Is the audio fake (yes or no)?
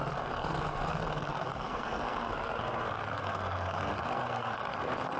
yes